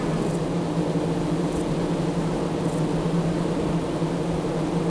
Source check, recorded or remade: recorded